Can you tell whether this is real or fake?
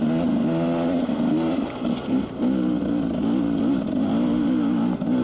real